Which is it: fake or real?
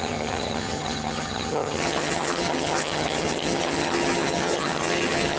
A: fake